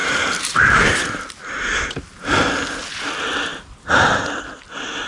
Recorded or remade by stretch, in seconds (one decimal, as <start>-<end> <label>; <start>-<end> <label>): 0.0-1.9 remade; 1.9-3.5 recorded; 3.5-4.2 remade; 4.2-5.1 recorded